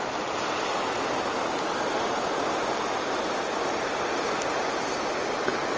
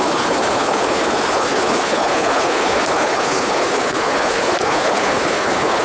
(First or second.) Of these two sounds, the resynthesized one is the second